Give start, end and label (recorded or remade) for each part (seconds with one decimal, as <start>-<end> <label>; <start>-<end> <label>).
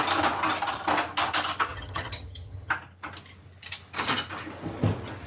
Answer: 0.0-1.7 recorded; 1.7-2.7 remade; 2.7-5.3 recorded